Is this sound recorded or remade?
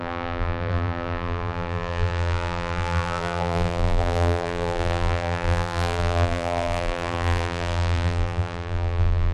remade